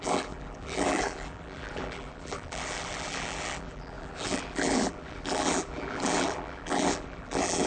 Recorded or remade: remade